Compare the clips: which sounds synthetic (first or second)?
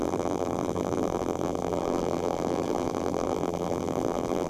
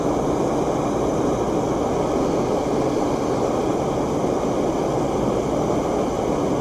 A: first